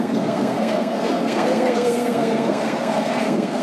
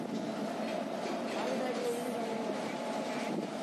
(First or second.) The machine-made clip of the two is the first